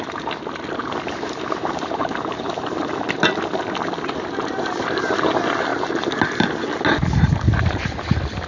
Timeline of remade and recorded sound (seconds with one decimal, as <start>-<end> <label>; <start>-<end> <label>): 0.0-0.8 recorded; 0.8-3.2 remade; 3.2-8.5 recorded